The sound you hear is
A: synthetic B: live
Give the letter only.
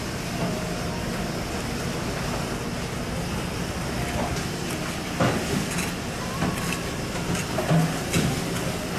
B